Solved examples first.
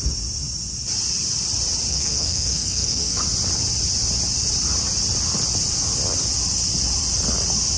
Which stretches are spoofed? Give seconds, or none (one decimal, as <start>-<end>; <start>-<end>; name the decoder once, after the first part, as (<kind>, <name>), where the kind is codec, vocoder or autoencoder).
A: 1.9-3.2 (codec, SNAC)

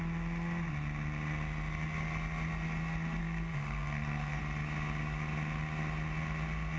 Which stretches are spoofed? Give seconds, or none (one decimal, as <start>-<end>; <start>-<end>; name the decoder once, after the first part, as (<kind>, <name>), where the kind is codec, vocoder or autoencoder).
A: 3.2-4.4 (codec, SNAC)

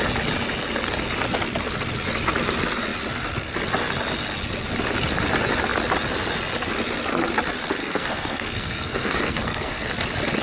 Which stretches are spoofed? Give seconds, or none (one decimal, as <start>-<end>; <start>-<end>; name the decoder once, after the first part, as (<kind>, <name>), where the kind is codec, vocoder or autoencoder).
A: 7.8-9.9 (codec, SNAC)

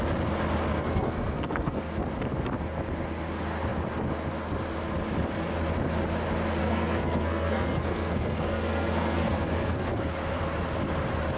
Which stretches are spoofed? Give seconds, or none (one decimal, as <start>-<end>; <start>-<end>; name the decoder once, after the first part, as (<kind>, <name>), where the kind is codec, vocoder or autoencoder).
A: 0.7-1.8 (codec, SNAC); 6.6-9.9